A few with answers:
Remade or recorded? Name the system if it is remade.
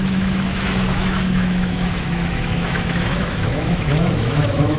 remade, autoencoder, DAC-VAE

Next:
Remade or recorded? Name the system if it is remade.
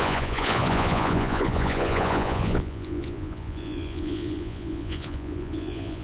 remade, vocoder, Vocos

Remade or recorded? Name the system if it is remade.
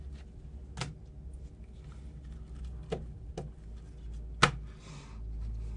recorded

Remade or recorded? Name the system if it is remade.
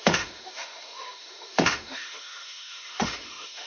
remade, autoencoder, DAC-VAE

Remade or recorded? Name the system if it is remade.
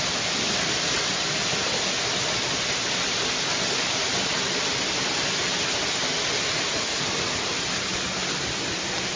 recorded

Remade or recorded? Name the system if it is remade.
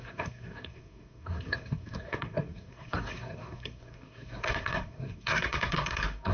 remade, codec, SNAC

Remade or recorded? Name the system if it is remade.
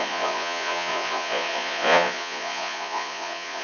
remade, vocoder, Vocos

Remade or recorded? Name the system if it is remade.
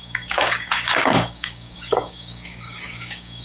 remade, codec, DAC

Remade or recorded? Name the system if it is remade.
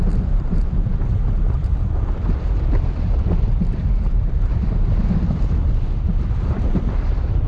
remade, vocoder, BigVGAN v2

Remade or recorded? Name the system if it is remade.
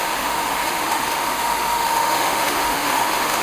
remade, autoencoder, DAC-VAE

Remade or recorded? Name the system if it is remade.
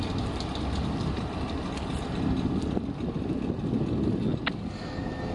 recorded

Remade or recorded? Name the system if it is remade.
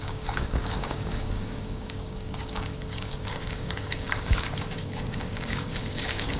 remade, codec, DAC